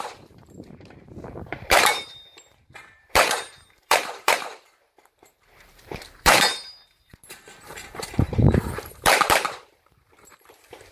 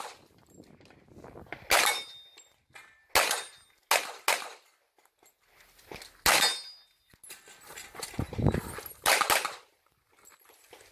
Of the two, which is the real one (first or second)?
second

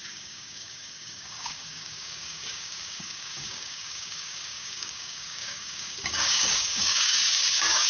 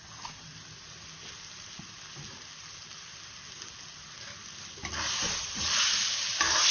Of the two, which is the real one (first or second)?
second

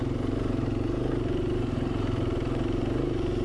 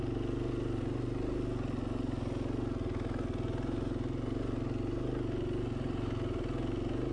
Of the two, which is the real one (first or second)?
second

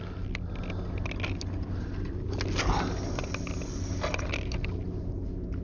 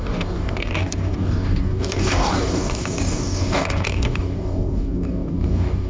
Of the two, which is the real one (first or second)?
first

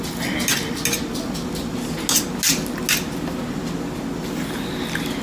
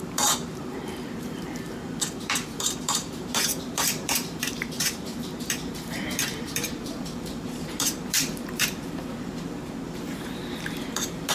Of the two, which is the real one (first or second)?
first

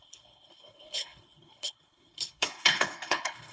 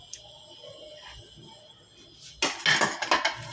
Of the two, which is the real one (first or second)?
second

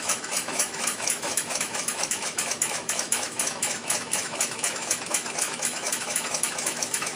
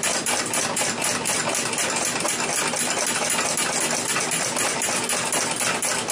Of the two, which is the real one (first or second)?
second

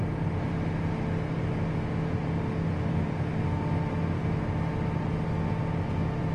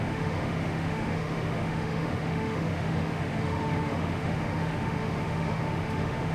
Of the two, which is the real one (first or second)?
first